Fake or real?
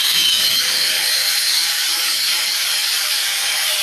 fake